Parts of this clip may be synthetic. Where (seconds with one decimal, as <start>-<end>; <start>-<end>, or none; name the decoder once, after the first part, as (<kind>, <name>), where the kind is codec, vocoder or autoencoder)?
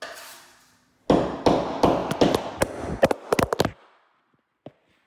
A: none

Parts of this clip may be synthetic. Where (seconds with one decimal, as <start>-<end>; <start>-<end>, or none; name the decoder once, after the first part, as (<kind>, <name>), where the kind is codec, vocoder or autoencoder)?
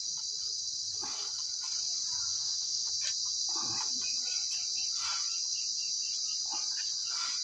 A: 2.3-2.9 (autoencoder, DAC-VAE)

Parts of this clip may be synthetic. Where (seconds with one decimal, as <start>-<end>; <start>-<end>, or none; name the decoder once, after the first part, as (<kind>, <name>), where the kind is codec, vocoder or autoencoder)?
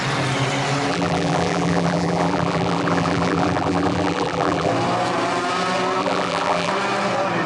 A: 0.9-4.7 (vocoder, BigVGAN v2); 6.0-6.7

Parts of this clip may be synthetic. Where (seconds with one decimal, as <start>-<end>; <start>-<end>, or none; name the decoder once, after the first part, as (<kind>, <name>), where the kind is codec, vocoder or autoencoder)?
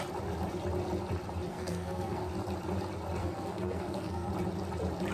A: 1.5-2.3 (codec, SNAC); 3.2-4.3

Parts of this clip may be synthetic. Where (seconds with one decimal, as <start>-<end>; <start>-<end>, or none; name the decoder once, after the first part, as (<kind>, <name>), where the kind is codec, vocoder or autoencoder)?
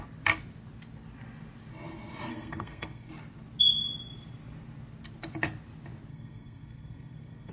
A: 2.3-3.1 (codec, SNAC); 6.1-7.5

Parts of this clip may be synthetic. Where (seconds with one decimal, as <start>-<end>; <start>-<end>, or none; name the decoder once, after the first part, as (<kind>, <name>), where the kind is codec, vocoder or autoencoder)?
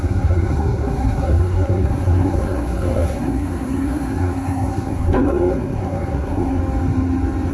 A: 0.0-6.6 (codec, SNAC)